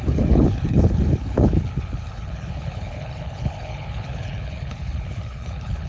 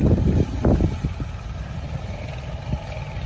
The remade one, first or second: first